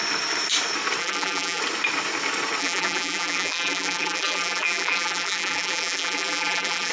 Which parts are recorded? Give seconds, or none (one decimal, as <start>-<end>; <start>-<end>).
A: 0.0-1.0; 1.6-2.6